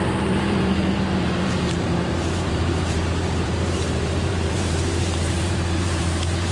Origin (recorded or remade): remade